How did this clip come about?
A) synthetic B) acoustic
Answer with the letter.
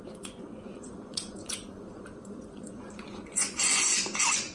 A